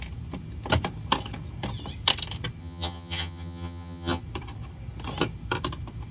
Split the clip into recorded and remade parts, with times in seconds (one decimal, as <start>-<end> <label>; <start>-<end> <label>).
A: 0.0-2.6 recorded; 2.6-4.2 remade; 4.2-6.1 recorded